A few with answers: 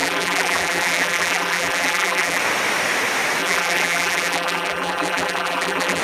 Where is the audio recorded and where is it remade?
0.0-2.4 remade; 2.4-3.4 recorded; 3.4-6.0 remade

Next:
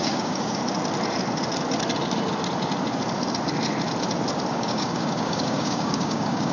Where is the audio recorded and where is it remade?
0.0-0.6 remade; 0.6-4.5 recorded; 4.5-6.5 remade

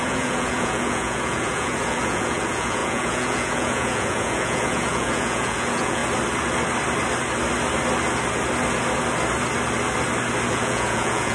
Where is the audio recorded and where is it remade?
0.0-6.0 remade; 6.0-10.5 recorded; 10.5-11.3 remade

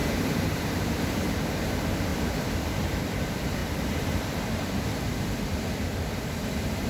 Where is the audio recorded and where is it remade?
0.0-1.4 remade; 1.4-2.1 recorded; 2.1-2.6 remade; 2.6-3.6 recorded; 3.6-4.9 remade; 4.9-6.9 recorded

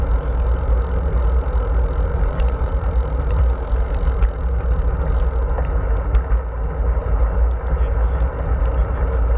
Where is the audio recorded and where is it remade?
0.0-2.1 recorded; 2.1-2.7 remade; 2.7-9.4 recorded

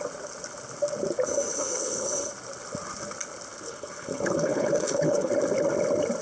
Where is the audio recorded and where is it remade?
0.0-1.5 recorded; 1.5-2.3 remade; 2.3-3.5 recorded; 3.5-5.3 remade; 5.3-6.2 recorded